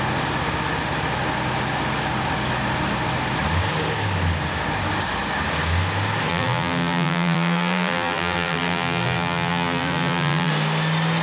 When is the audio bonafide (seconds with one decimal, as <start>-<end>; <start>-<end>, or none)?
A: 0.0-6.3; 10.5-11.2